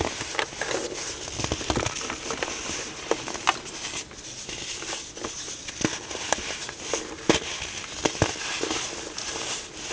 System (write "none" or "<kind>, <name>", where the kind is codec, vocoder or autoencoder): none